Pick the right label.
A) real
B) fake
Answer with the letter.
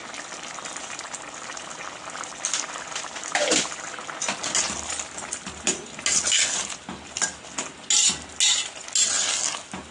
A